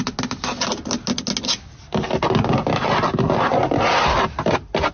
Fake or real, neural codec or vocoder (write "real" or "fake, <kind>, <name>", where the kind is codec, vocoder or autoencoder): real